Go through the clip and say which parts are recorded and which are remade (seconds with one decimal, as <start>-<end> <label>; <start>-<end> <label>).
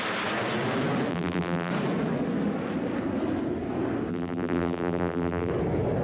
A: 0.0-1.1 recorded; 1.1-1.7 remade; 1.7-4.1 recorded; 4.1-5.5 remade; 5.5-6.0 recorded